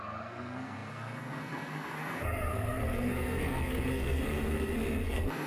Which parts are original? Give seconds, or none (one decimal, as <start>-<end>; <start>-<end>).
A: none